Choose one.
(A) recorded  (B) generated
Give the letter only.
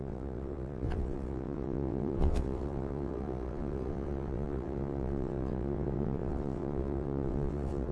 B